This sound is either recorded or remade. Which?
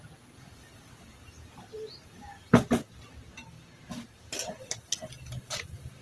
recorded